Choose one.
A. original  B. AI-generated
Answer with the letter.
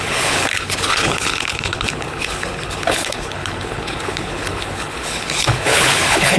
B